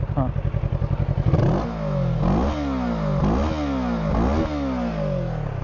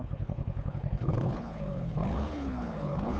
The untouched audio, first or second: first